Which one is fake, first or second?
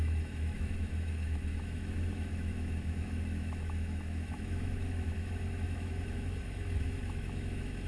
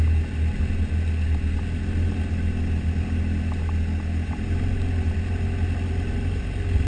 first